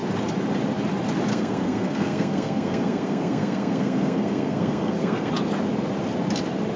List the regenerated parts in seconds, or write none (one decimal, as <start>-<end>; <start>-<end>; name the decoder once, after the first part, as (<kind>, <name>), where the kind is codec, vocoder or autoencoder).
1.3-5.3 (codec, SNAC)